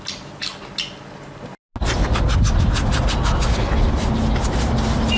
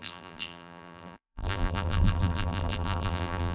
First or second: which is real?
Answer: first